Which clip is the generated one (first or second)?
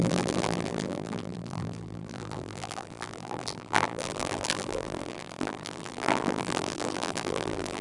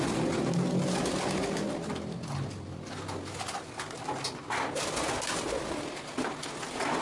first